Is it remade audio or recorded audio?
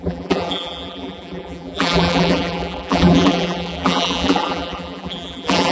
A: remade